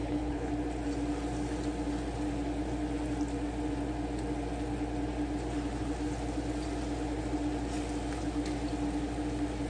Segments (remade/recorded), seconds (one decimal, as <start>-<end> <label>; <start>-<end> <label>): 0.0-0.5 remade; 0.5-9.7 recorded